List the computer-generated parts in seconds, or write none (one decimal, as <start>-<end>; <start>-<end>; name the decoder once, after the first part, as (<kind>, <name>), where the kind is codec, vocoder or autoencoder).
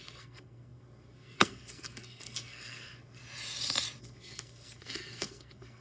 0.0-3.2 (codec, SNAC); 4.0-5.8